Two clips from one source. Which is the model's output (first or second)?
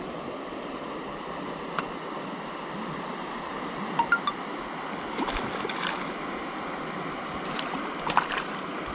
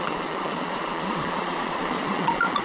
second